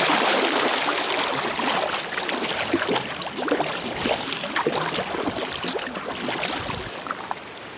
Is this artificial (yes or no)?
no